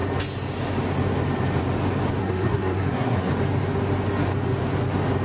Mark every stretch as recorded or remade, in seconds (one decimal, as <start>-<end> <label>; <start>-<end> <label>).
0.0-2.2 recorded; 2.2-3.3 remade; 3.3-5.2 recorded